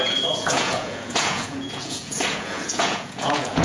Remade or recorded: remade